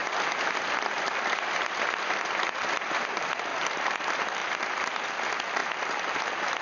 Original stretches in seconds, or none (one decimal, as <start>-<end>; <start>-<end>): 3.1-3.5; 4.0-4.4; 5.1-6.6